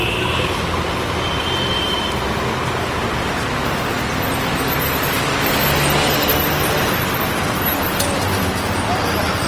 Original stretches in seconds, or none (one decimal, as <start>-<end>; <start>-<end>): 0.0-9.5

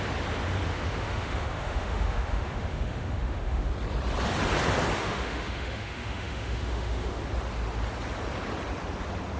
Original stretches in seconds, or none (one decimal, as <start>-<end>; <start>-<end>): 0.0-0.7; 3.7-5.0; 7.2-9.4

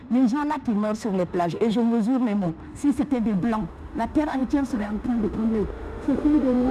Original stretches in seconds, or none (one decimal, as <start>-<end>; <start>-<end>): none

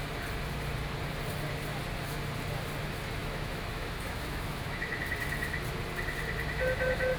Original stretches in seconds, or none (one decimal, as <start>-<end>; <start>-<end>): 0.0-3.2; 5.0-7.2

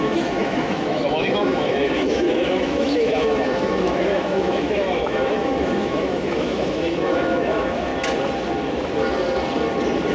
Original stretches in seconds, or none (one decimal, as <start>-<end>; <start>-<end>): 7.9-10.1

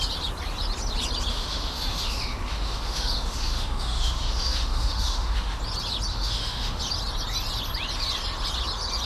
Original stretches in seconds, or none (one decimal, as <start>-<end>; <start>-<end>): 0.0-1.3; 5.6-6.1; 6.8-9.0

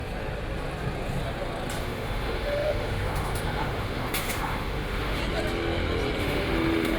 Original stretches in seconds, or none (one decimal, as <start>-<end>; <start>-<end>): 0.0-1.8; 5.2-6.2

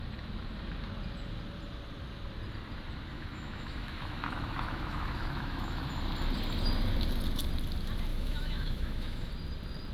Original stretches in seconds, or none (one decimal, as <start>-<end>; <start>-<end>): 0.0-3.1; 5.9-8.1; 9.3-9.9